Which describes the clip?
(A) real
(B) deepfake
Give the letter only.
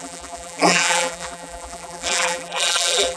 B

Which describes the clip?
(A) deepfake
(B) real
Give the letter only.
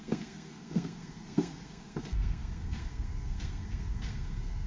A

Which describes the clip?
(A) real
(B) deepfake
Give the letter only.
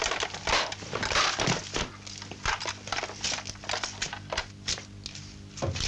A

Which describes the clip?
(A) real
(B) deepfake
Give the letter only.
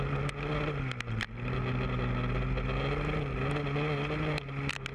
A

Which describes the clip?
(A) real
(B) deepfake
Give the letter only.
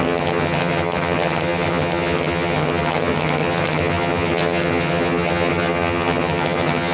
B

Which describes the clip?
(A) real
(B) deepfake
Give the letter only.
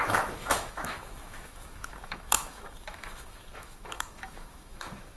B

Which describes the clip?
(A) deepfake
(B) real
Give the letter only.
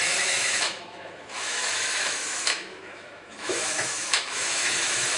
A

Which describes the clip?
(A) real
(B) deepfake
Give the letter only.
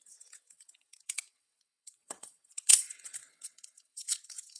B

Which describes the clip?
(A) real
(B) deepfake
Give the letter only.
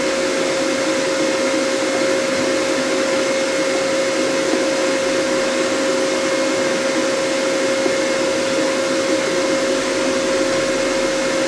A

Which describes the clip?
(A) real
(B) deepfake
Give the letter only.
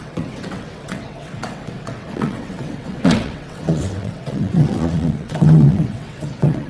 B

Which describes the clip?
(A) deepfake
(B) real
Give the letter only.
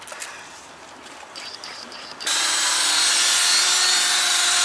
B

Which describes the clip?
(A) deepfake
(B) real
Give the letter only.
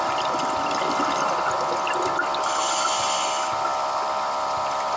B